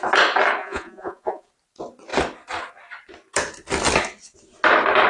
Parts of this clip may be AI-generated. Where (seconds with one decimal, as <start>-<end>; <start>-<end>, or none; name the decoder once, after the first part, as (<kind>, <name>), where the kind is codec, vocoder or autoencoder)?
0.6-1.5 (vocoder, Vocos)